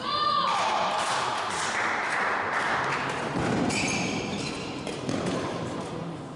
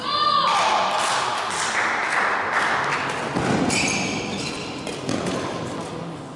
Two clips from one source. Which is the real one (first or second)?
second